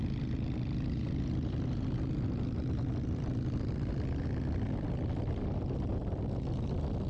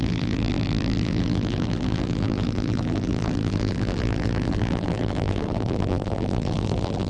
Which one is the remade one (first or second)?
second